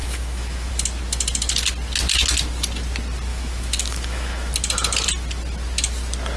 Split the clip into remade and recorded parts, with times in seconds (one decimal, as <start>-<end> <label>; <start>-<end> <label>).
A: 0.0-0.7 remade; 0.7-3.3 recorded; 3.3-4.5 remade; 4.5-6.4 recorded